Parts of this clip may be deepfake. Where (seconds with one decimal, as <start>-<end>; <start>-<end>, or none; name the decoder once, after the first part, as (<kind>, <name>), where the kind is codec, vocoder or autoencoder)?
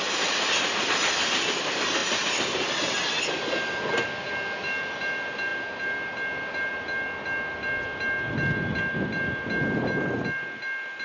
none